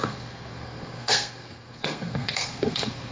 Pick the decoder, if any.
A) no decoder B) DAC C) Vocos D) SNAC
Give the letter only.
D